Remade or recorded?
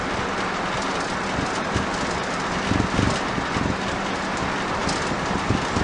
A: recorded